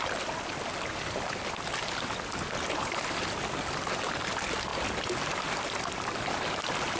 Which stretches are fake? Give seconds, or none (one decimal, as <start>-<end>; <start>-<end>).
none